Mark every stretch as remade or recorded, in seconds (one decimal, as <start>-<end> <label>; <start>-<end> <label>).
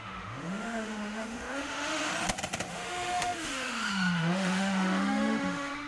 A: 0.0-2.1 remade; 2.1-2.7 recorded; 2.7-5.9 remade